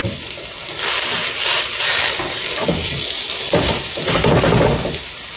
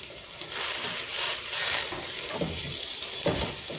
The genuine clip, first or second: first